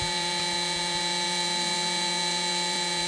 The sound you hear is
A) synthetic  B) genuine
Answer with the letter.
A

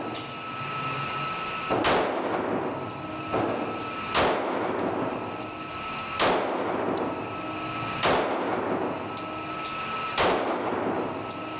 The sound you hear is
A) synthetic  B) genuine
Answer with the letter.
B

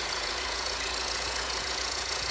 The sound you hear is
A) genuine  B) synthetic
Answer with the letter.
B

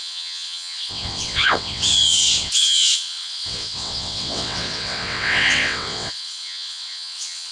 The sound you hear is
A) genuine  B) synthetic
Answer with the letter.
B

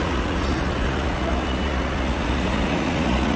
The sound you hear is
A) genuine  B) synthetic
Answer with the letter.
B